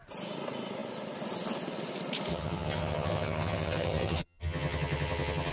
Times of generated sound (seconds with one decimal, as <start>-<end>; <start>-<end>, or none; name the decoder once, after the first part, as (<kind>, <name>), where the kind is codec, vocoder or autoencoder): 2.3-5.5 (vocoder, HiFi-GAN)